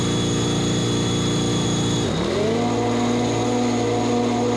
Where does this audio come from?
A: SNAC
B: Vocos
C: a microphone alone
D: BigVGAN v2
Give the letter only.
C